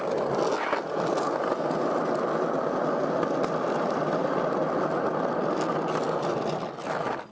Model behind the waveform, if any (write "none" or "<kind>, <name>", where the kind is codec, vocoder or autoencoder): none